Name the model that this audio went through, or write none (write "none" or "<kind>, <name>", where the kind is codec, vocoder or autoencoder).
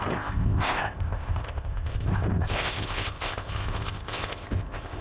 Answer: codec, ZipCodec